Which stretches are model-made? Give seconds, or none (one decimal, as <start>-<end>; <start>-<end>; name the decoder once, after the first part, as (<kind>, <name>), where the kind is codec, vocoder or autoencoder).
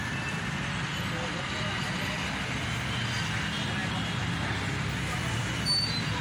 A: none